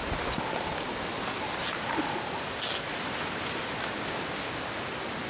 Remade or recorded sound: recorded